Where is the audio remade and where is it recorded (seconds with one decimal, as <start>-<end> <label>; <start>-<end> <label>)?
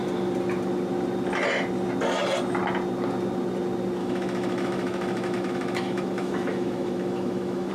0.0-4.0 recorded; 4.0-7.7 remade